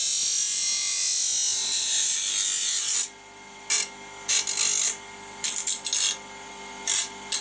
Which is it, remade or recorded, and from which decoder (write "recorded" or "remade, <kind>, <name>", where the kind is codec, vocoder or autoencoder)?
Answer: recorded